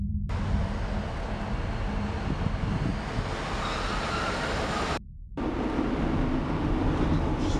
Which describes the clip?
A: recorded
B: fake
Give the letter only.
A